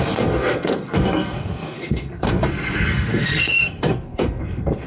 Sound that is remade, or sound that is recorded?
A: remade